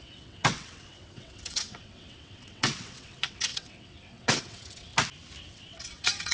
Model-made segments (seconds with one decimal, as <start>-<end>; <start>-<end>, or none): 0.0-4.9; 5.5-6.3